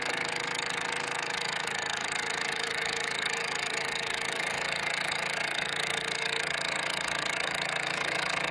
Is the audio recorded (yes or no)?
no